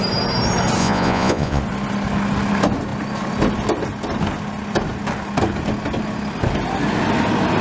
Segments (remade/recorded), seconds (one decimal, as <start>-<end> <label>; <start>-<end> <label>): 0.0-0.8 recorded; 0.8-1.6 remade; 1.6-7.6 recorded